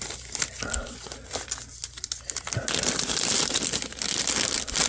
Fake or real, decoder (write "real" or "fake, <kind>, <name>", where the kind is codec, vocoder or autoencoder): real